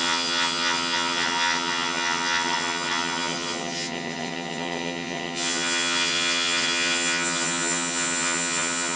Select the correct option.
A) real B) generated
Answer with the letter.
B